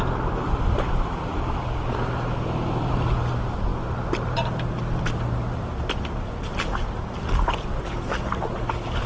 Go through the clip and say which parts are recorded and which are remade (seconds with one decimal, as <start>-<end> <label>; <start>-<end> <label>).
0.0-9.1 recorded

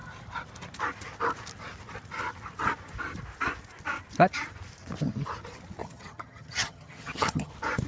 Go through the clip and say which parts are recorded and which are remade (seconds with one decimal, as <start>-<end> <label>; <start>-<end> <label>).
0.0-5.8 recorded; 5.8-7.5 remade; 7.5-7.9 recorded

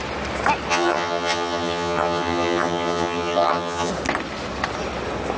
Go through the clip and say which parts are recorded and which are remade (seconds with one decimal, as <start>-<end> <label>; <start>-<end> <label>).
0.0-0.7 recorded; 0.7-3.9 remade; 3.9-5.4 recorded